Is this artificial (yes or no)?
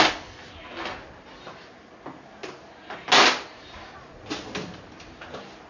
no